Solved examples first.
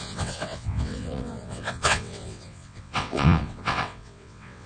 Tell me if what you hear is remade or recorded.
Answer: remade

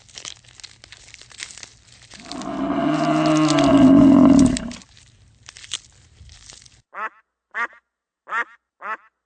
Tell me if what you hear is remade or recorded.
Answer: recorded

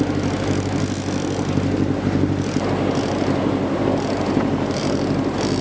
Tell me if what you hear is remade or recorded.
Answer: recorded